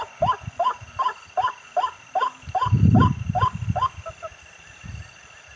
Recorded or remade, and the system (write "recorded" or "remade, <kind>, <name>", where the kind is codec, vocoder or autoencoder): recorded